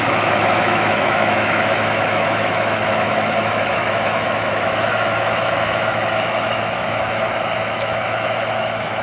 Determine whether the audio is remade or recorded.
remade